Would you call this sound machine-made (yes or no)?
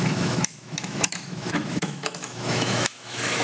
yes